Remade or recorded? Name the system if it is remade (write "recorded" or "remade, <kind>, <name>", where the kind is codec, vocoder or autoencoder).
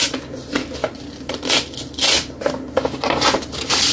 recorded